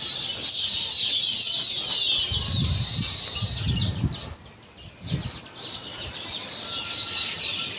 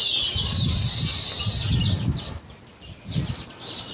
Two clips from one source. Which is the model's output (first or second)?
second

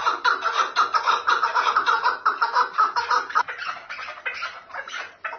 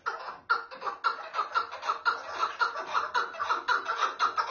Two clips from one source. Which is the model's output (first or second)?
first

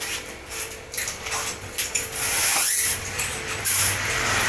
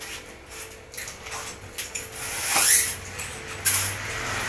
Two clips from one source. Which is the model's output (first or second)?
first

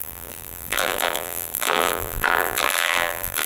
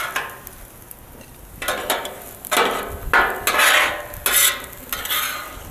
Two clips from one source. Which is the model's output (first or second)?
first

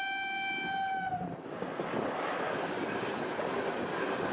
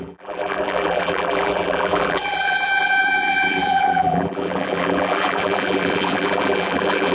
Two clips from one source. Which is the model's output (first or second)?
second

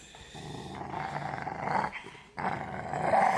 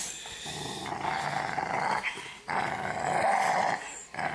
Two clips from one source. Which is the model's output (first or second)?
first